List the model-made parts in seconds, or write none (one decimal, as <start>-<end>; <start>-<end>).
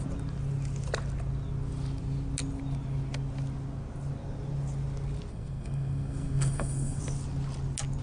5.3-7.0